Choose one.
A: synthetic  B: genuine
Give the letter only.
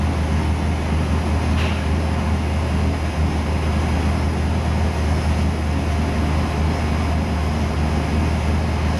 B